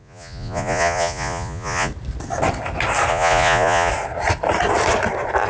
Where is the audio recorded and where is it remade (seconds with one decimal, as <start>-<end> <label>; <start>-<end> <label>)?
0.0-1.9 remade; 1.9-3.1 recorded; 3.1-3.9 remade; 3.9-5.5 recorded